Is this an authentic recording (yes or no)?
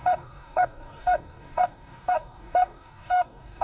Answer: no